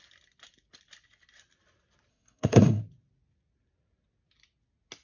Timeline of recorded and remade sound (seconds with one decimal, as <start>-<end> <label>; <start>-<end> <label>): 0.0-2.1 recorded; 2.1-2.8 remade; 2.8-5.0 recorded